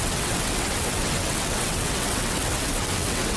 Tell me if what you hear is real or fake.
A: fake